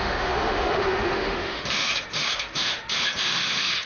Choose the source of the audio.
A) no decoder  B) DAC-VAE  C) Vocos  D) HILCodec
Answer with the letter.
B